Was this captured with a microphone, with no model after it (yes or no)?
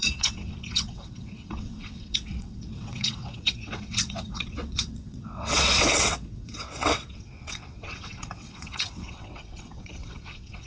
no